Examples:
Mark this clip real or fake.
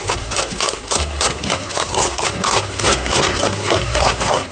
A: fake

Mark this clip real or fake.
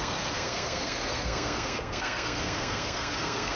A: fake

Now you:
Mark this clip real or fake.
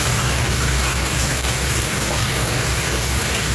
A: fake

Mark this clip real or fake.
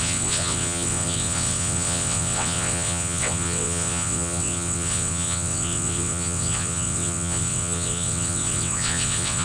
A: fake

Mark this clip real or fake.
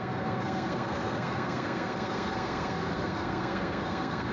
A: fake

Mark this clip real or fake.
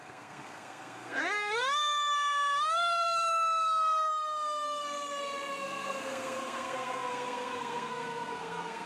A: fake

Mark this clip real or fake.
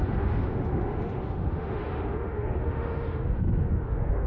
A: fake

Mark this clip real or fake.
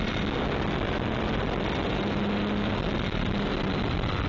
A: real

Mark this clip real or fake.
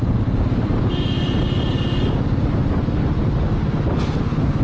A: real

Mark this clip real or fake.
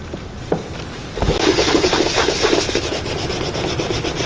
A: fake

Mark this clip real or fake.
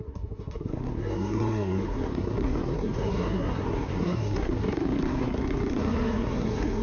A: fake